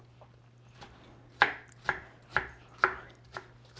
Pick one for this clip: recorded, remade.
recorded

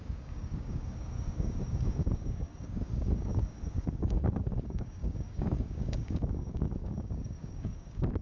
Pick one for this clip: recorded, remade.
remade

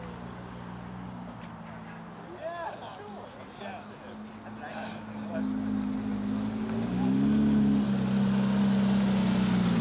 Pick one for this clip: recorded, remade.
recorded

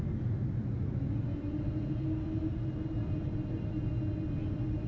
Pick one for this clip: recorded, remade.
recorded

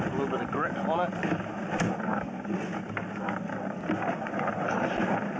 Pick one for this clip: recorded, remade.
recorded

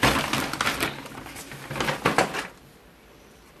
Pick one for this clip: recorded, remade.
recorded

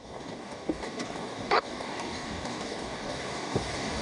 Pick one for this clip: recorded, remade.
remade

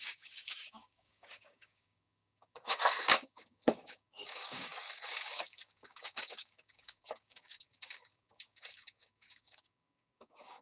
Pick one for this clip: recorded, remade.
remade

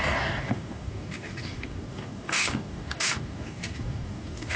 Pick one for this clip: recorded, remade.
remade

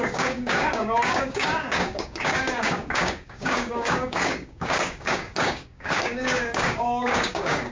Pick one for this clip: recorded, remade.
remade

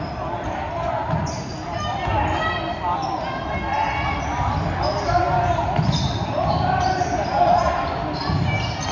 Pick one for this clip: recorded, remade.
recorded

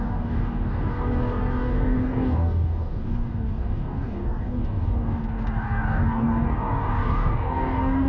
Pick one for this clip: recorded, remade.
remade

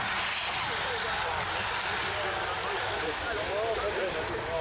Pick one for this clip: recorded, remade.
recorded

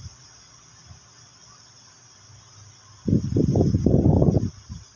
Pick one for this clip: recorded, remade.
recorded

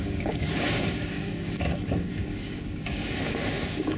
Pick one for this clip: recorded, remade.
remade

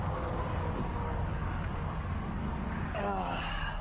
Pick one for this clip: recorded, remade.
remade